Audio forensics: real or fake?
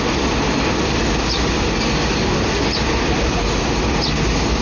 real